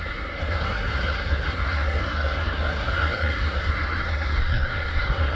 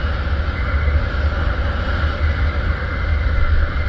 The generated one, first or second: first